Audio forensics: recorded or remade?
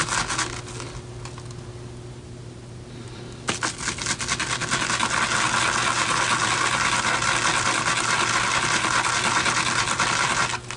recorded